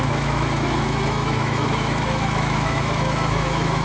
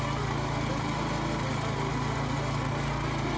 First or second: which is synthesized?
first